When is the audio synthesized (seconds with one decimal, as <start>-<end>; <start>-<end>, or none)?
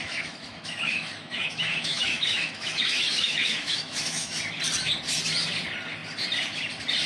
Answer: 0.0-4.3